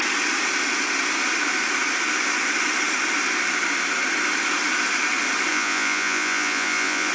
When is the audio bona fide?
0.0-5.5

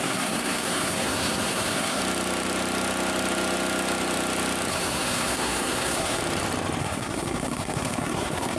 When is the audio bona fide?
2.0-4.7; 6.2-6.8

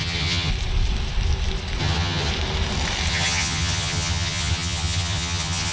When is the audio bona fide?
0.5-1.8; 2.3-3.1

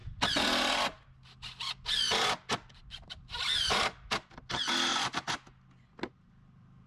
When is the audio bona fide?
0.0-6.9

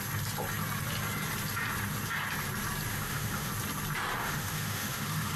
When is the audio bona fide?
0.0-2.9; 3.5-4.2

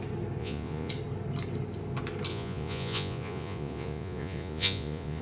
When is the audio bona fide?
0.0-0.4; 0.9-2.3